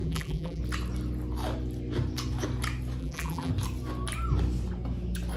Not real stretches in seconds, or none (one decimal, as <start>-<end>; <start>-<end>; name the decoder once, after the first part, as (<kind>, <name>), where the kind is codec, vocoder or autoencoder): 0.0-0.6 (vocoder, BigVGAN v2); 3.0-3.5